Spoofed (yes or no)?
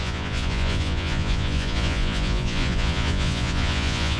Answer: yes